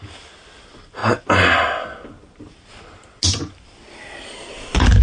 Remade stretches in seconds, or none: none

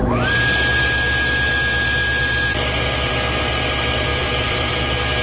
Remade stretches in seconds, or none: 4.1-4.7 (vocoder, BigVGAN v2)

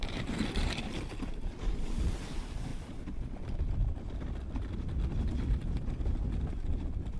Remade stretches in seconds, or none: 0.0-2.7 (vocoder, BigVGAN v2); 5.2-7.2

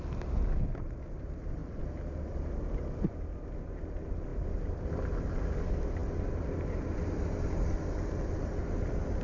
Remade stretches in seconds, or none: none

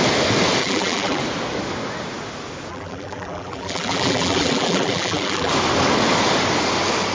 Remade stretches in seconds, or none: 0.6-1.2 (vocoder, BigVGAN v2); 2.7-5.5